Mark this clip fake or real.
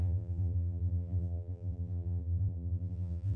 fake